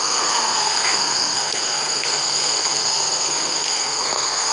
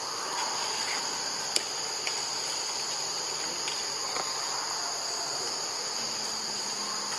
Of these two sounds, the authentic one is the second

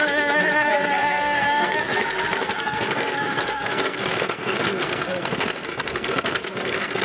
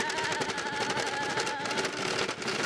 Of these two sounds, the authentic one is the second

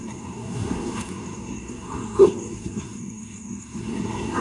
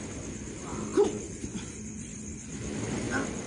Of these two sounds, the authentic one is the second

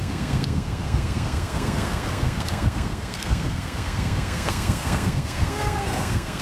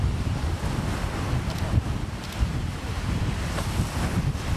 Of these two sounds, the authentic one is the second